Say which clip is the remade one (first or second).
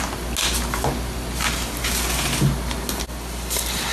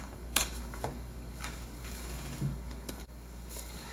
second